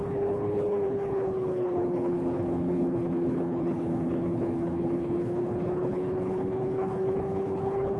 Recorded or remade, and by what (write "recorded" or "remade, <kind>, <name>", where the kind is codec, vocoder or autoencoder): remade, codec, HILCodec